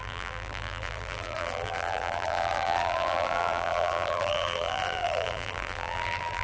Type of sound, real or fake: fake